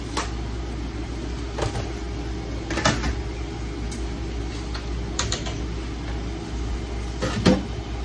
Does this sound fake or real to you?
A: real